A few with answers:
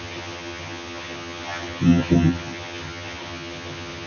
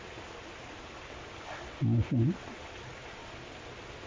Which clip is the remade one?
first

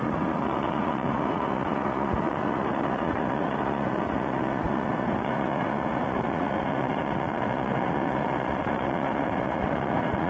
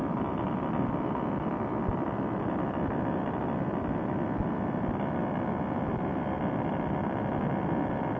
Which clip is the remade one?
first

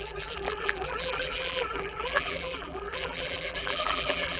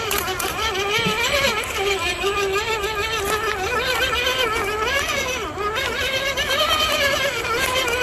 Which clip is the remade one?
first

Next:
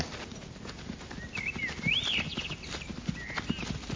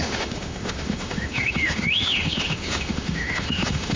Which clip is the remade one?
second